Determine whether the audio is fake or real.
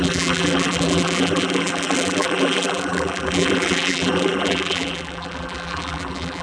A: fake